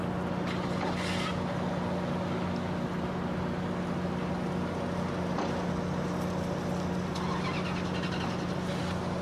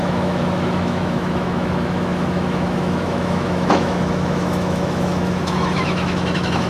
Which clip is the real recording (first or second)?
first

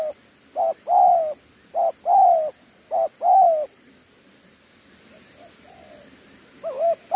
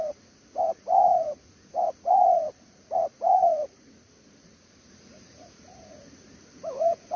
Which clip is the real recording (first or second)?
first